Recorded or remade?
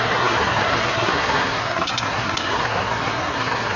remade